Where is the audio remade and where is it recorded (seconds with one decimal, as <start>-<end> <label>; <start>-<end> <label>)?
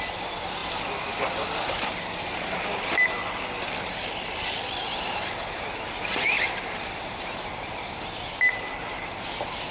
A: 0.0-9.7 recorded